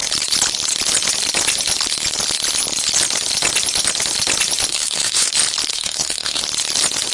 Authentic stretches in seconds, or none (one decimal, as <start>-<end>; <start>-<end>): 0.0-4.7; 5.3-5.7; 6.4-7.1